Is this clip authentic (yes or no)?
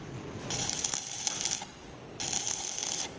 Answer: yes